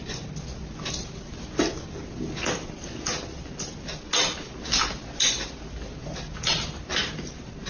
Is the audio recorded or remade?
recorded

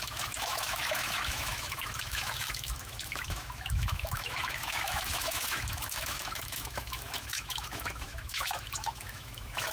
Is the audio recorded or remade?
remade